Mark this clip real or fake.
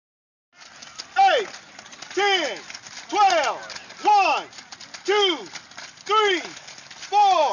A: real